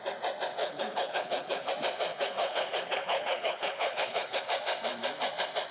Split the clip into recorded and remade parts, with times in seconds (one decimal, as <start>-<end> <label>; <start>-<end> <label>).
0.0-0.6 recorded; 0.6-1.7 remade; 1.7-2.1 recorded; 2.1-4.4 remade; 4.4-5.7 recorded